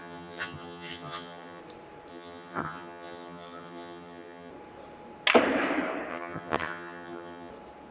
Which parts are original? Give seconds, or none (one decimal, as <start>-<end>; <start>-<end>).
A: 1.6-2.1; 4.5-6.1; 7.5-7.9